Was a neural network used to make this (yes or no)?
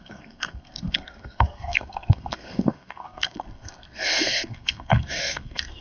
yes